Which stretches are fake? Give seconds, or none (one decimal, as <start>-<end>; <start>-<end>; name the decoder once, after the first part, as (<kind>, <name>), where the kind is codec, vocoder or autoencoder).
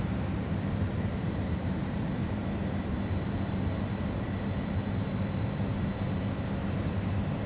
0.0-2.4 (vocoder, BigVGAN v2); 6.4-7.5